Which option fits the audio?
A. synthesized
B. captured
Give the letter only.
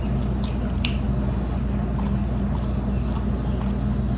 B